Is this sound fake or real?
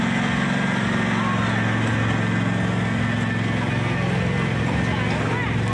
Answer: real